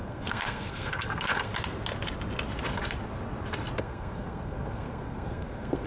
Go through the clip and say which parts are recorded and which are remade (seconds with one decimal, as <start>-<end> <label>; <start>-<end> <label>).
0.0-1.5 remade; 1.5-3.8 recorded; 3.8-5.9 remade